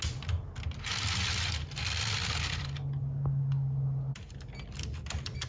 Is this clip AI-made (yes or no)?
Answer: no